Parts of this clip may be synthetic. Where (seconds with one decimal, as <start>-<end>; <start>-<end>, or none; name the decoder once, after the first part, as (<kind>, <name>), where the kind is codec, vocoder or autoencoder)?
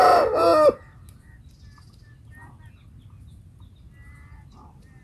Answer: none